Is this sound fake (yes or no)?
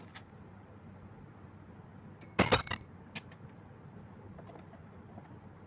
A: no